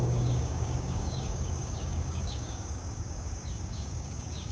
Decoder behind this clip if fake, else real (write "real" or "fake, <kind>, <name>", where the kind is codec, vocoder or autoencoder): fake, codec, DAC